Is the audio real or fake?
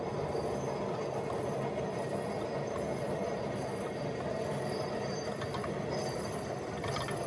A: real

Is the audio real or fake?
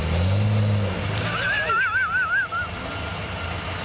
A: real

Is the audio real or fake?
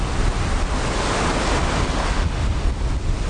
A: real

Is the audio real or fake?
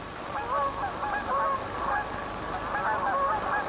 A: real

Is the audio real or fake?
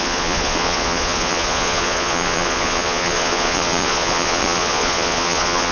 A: fake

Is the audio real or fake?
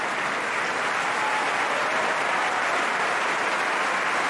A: real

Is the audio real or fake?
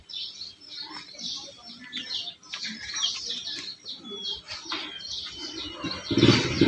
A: real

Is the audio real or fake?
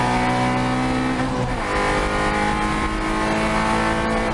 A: real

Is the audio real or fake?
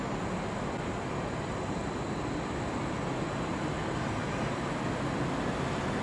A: real